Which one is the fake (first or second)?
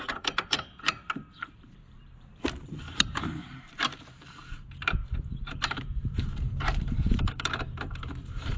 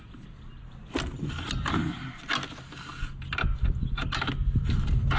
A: first